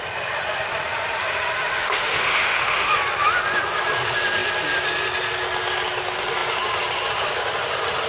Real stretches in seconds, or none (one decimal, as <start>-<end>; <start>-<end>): 0.0-1.8; 2.9-8.1